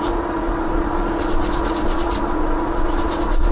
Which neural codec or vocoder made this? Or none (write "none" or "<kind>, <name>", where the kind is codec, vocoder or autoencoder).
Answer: vocoder, Vocos